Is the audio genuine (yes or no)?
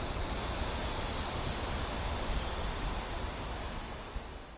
yes